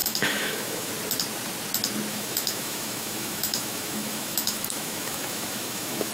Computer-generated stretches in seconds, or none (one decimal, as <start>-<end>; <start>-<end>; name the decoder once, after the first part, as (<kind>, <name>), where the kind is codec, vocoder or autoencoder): 0.0-0.9 (autoencoder, DAC-VAE); 2.1-6.1